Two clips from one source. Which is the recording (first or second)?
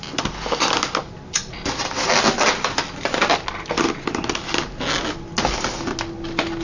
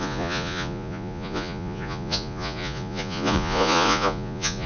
first